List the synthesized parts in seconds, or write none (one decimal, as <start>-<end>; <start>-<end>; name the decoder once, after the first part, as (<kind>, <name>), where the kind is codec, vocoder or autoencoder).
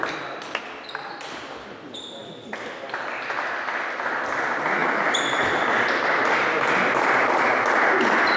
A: 2.2-3.0 (vocoder, BigVGAN v2); 4.8-7.1